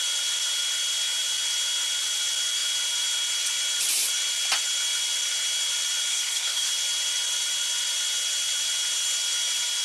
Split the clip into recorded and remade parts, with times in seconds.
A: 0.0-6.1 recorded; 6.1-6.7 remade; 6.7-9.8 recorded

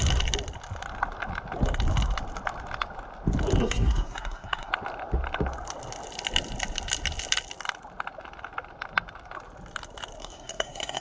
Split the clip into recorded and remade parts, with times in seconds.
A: 0.0-3.6 recorded; 3.6-4.7 remade; 4.7-10.2 recorded; 10.2-11.0 remade

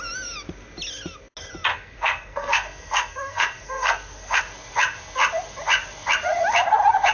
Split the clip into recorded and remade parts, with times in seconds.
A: 0.0-1.7 recorded; 1.7-4.4 remade; 4.4-7.1 recorded